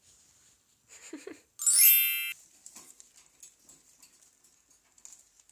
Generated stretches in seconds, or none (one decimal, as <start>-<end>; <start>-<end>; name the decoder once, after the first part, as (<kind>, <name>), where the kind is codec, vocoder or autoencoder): none